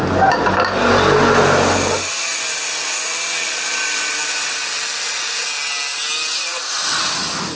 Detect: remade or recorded recorded